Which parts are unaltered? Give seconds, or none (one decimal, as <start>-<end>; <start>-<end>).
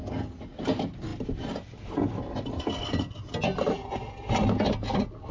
0.0-5.3